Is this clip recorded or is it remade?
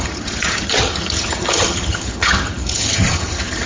remade